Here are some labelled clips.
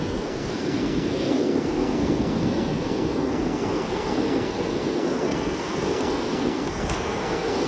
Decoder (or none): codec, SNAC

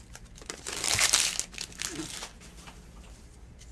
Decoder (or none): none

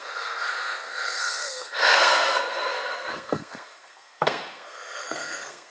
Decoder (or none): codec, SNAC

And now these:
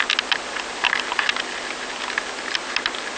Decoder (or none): none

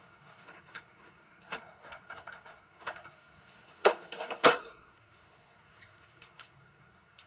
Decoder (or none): codec, SNAC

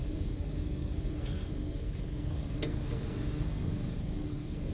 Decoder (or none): codec, SNAC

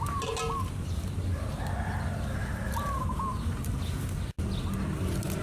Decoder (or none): none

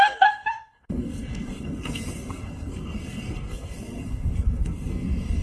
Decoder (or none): codec, SNAC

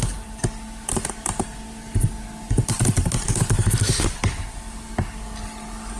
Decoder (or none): none